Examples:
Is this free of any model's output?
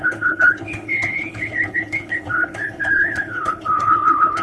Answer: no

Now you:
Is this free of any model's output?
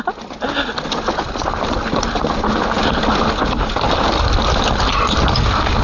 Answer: yes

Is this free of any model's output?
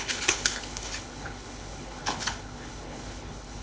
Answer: no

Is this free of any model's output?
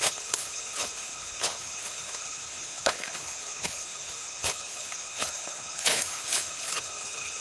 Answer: no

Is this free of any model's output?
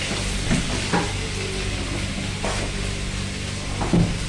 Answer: yes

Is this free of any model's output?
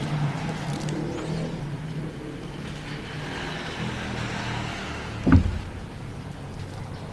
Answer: yes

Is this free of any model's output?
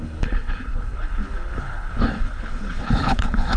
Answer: no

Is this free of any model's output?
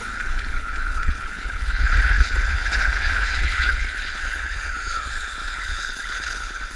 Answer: no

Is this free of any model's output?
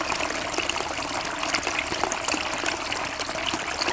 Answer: yes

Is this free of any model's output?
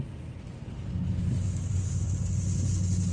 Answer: yes